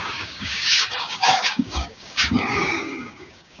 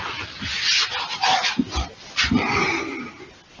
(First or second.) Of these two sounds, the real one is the second